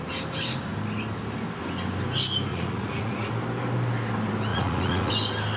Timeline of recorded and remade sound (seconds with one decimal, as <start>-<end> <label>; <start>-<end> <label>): 0.0-2.5 recorded; 2.5-3.3 remade; 3.3-4.5 recorded; 4.5-5.1 remade; 5.1-5.6 recorded